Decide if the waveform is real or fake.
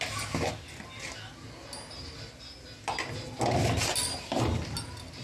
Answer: real